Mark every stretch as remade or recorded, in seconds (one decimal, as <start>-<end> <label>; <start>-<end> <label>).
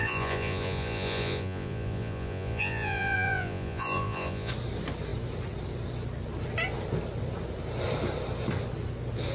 0.0-4.5 remade; 4.5-9.3 recorded